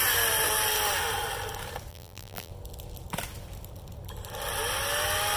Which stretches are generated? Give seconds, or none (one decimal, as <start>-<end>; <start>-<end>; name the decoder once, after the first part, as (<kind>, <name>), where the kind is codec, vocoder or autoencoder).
1.9-2.5 (vocoder, BigVGAN v2)

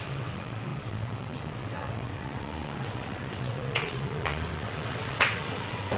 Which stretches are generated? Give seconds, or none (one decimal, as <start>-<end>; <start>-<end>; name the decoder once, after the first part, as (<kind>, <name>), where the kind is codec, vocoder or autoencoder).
0.0-6.0 (vocoder, WaveNeXt)

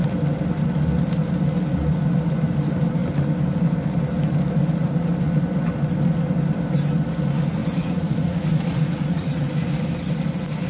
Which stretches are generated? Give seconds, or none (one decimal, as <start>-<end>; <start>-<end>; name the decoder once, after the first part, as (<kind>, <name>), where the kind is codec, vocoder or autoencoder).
7.6-9.5 (vocoder, Vocos)